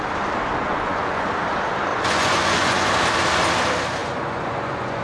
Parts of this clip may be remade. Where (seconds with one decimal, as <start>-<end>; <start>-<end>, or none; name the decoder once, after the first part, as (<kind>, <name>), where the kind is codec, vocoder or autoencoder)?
0.6-1.3 (vocoder, Vocos); 1.9-2.9; 4.0-5.0